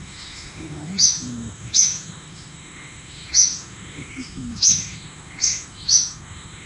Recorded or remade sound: remade